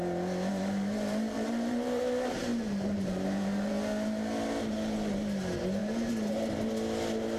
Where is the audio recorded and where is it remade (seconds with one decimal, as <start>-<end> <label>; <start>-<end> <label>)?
0.0-0.5 recorded; 0.5-2.0 remade; 2.0-2.5 recorded; 2.5-3.7 remade; 3.7-5.8 recorded; 5.8-6.5 remade; 6.5-7.4 recorded